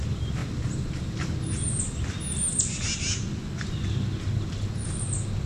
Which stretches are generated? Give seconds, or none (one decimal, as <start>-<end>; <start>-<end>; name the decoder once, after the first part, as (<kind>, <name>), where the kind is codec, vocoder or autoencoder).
none